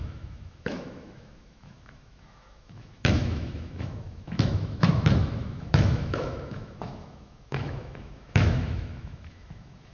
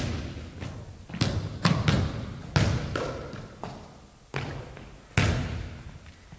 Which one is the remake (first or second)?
first